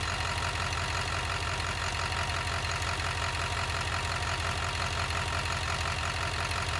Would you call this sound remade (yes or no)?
no